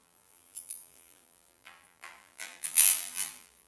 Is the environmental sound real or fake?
fake